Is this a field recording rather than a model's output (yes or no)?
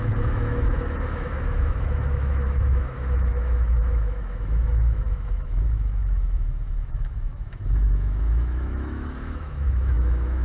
no